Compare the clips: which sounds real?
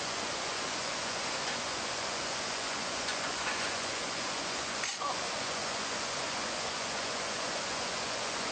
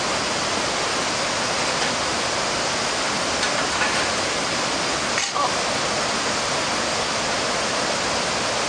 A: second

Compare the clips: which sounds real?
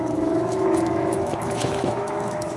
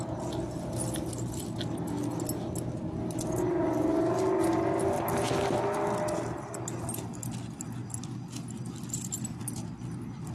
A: second